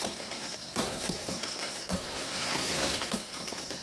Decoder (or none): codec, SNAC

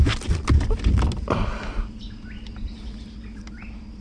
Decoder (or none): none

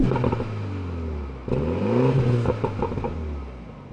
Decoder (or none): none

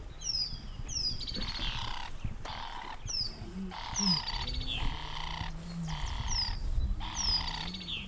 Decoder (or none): none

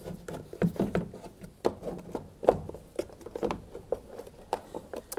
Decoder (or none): none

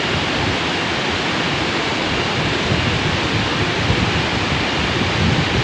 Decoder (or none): none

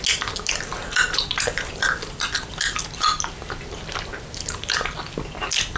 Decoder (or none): none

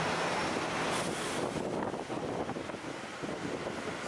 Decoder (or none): none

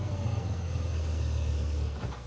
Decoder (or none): codec, SNAC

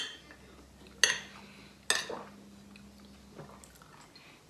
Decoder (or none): none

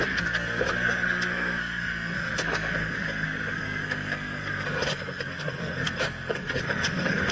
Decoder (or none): codec, SNAC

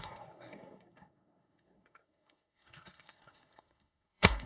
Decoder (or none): codec, SNAC